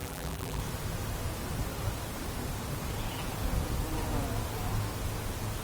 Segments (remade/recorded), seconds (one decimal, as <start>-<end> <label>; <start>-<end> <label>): 0.0-0.6 remade; 0.6-5.6 recorded